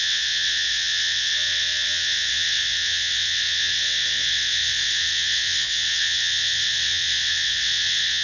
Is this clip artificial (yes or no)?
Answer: yes